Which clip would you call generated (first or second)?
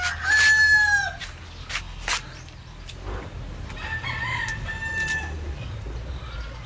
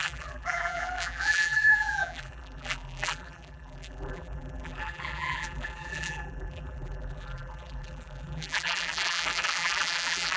second